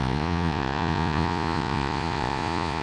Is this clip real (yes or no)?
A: no